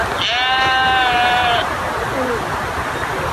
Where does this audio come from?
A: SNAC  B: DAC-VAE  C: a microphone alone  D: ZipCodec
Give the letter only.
C